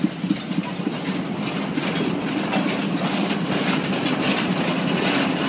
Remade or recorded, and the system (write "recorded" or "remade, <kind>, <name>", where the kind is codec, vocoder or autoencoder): recorded